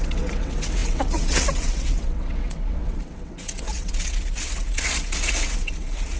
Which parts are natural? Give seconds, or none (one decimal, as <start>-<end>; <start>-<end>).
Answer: none